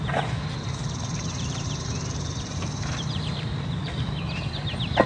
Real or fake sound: fake